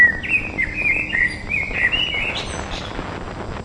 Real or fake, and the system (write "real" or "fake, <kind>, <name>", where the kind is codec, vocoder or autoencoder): real